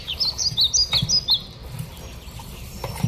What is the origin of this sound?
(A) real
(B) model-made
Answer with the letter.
A